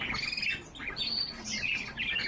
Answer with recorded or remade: recorded